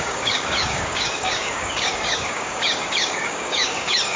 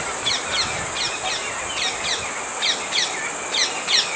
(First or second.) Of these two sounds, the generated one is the first